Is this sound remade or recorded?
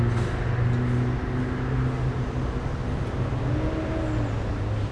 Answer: recorded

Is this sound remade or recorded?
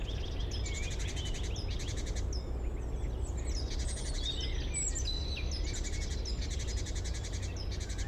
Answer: recorded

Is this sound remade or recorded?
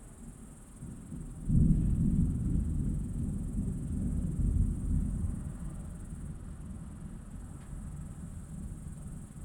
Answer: recorded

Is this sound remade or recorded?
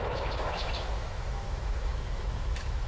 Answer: remade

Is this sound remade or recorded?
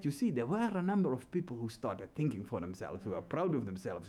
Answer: remade